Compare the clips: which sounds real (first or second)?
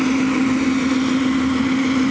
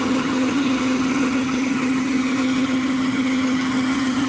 first